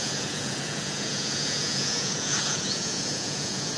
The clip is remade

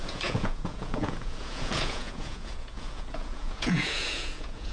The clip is remade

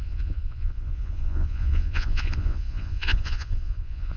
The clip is remade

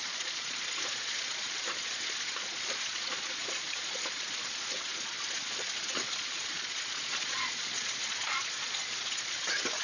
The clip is remade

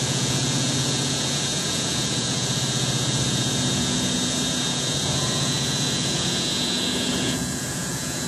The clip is remade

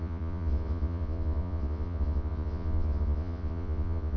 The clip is remade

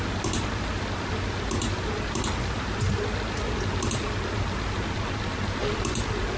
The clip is recorded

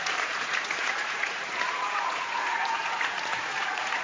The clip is remade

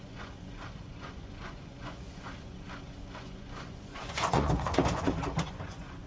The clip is remade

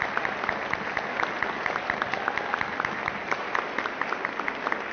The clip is recorded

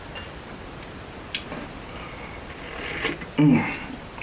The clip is recorded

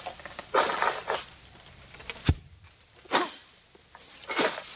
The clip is recorded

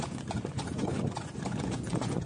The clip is remade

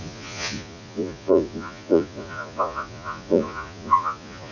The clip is remade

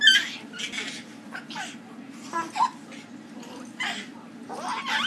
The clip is recorded